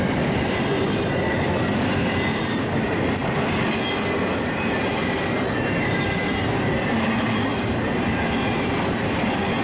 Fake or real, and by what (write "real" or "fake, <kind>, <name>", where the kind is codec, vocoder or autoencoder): real